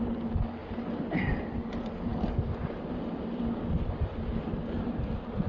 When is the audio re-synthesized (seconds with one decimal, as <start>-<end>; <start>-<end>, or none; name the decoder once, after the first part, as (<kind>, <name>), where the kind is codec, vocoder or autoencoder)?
0.6-1.2 (vocoder, BigVGAN v2)